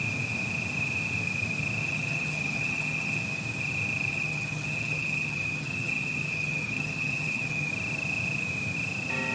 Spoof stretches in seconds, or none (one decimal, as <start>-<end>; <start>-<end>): 1.8-3.2; 4.1-7.7

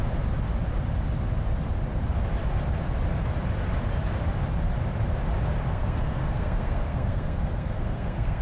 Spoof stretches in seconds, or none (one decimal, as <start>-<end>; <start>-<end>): 5.7-8.4

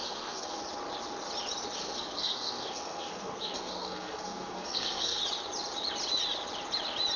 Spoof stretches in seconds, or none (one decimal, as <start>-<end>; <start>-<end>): 0.0-0.6; 1.8-5.2

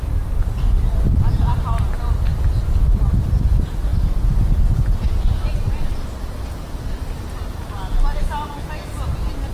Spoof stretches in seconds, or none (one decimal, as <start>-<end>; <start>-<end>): none

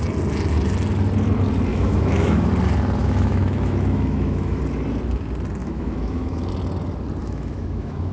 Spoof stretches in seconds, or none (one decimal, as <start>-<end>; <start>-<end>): 1.7-2.5; 3.0-4.6; 5.6-6.5; 7.2-8.1